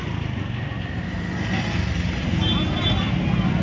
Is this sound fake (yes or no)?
no